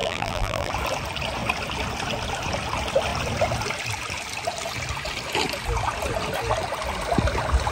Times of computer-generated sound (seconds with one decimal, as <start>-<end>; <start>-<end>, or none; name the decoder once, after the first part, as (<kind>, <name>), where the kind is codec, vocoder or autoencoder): 0.0-0.7 (vocoder, BigVGAN v2)